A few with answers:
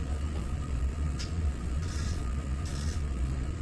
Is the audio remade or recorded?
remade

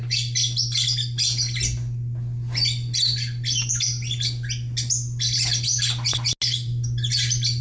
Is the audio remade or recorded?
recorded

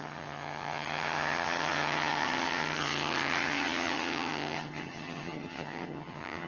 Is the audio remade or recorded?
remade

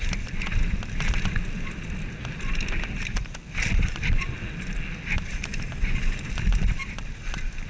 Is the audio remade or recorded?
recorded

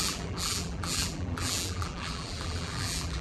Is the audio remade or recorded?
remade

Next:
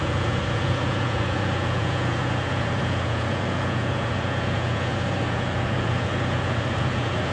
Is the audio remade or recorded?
remade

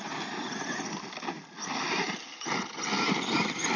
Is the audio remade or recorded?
recorded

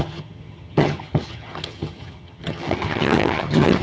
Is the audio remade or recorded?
remade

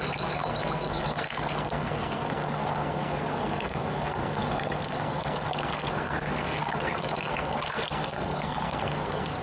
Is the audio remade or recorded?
remade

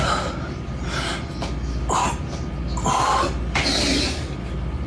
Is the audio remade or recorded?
recorded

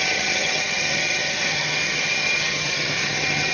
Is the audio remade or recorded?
remade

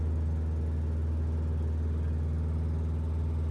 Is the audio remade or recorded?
recorded